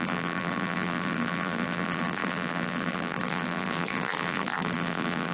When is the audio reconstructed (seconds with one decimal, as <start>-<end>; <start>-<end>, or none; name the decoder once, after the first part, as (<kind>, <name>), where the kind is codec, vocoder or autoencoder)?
0.0-5.3 (vocoder, BigVGAN v2)